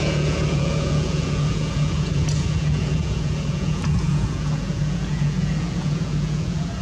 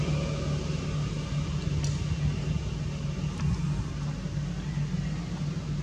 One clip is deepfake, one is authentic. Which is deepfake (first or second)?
first